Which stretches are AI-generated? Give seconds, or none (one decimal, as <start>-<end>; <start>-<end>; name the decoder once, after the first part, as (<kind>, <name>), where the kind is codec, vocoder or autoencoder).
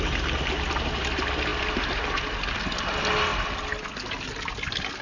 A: none